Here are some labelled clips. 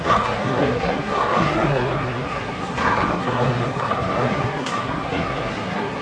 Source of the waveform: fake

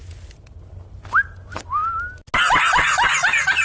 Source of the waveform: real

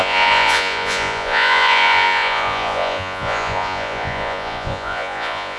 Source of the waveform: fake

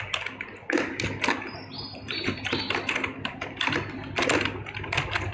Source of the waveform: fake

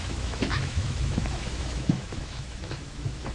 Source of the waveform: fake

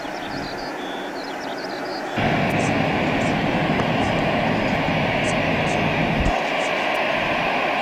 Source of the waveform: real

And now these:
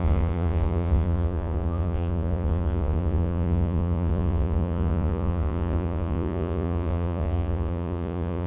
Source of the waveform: fake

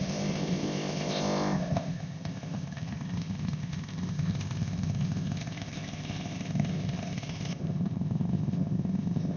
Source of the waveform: fake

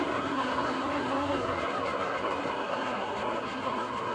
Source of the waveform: fake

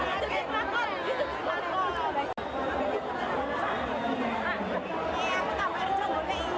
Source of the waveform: real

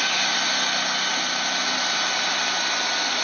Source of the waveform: real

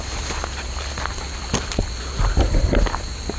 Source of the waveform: real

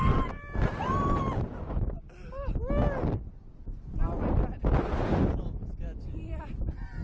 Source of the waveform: real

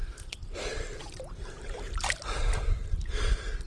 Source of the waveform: fake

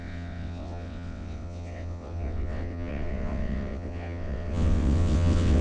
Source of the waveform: fake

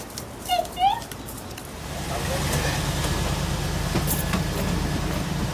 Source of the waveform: real